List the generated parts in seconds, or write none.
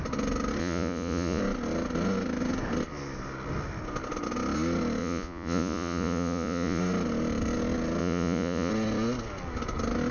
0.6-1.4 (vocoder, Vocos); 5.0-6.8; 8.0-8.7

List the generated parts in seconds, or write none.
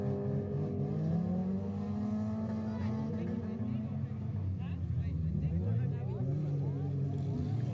none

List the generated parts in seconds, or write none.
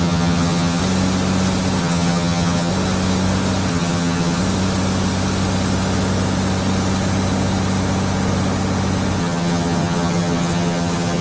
0.0-0.8 (vocoder, HiFi-GAN); 1.8-2.7; 3.7-4.4; 9.2-11.2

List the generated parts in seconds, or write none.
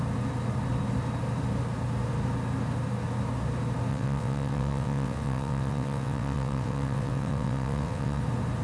3.9-8.2 (vocoder, WaveNeXt)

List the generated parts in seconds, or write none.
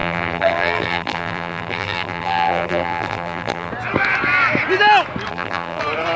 0.0-3.7 (vocoder, BigVGAN v2); 5.3-5.8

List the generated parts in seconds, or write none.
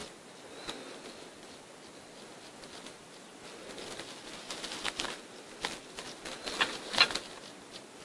none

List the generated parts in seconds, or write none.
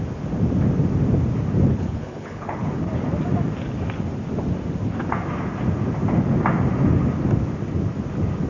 1.7-2.7 (codec, HILCodec)